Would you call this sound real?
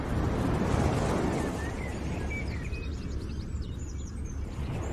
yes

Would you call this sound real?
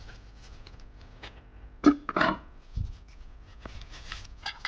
yes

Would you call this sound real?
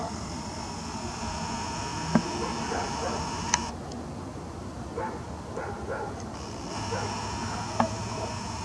yes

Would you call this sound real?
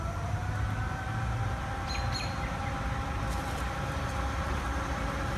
yes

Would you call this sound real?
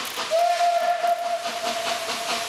yes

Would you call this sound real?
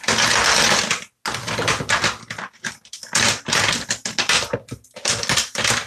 yes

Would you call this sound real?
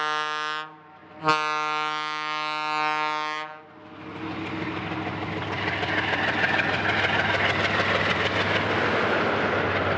yes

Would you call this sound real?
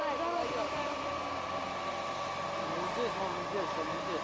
yes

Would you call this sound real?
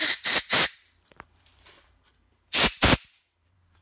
no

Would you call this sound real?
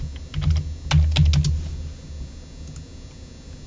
yes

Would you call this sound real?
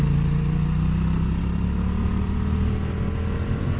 yes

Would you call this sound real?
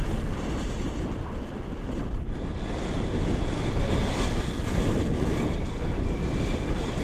yes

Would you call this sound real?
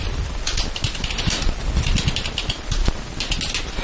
yes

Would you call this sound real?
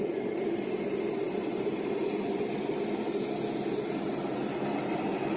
yes